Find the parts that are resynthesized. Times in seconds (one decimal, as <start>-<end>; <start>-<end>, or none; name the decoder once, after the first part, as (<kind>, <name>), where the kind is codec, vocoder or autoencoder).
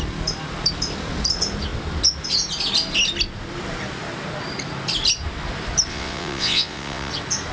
5.9-7.1 (vocoder, WaveNeXt)